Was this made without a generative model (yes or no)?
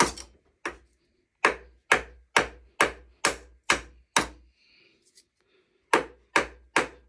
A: yes